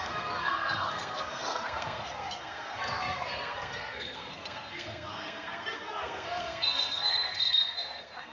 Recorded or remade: remade